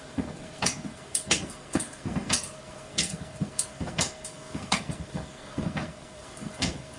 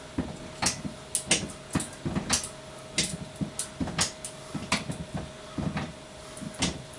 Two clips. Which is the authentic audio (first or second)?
second